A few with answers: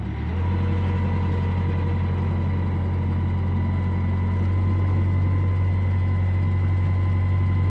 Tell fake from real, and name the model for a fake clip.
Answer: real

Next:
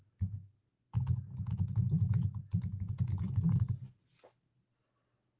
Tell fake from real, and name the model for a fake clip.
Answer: real